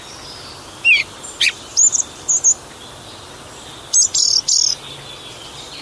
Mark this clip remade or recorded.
recorded